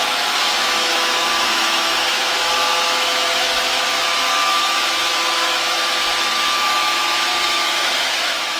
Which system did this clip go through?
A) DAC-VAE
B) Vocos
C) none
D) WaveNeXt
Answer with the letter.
A